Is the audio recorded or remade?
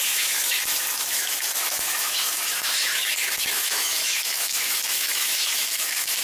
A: remade